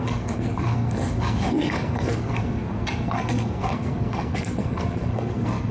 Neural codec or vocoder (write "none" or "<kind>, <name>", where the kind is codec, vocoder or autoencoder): codec, SNAC